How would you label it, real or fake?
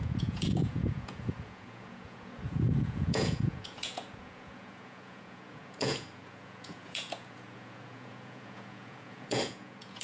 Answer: fake